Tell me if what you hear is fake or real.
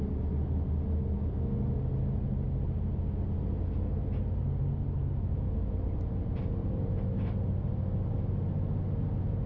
real